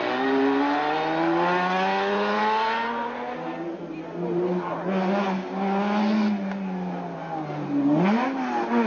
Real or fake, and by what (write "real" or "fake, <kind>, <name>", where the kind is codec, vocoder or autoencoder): real